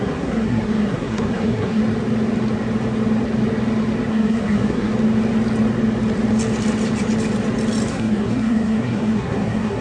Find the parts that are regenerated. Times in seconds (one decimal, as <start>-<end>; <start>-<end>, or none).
0.0-1.8; 4.1-4.9; 7.9-9.8